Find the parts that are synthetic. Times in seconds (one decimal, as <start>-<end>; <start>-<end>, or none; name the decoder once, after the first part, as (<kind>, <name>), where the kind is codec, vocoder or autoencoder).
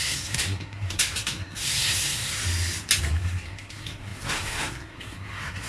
0.0-2.4 (codec, SNAC); 3.0-5.7